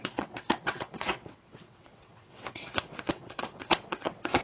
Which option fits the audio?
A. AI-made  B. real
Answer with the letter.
A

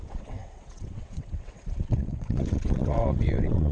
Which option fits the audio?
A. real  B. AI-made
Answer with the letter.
B